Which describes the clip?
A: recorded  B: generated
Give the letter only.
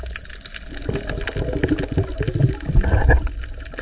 A